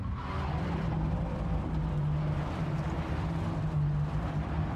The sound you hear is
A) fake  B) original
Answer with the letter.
B